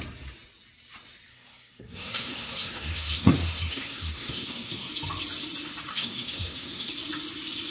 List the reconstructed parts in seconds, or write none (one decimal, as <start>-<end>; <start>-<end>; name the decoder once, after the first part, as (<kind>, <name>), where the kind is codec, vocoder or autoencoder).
1.3-4.9 (codec, SNAC); 5.9-6.9